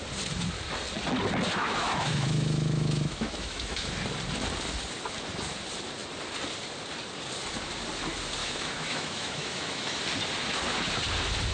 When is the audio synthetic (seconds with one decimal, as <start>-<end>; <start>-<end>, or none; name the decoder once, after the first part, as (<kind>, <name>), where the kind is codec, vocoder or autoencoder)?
1.6-3.9 (autoencoder, DAC-VAE); 8.4-10.0